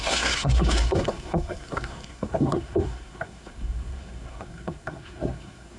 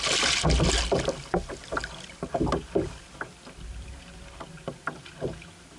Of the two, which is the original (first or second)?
second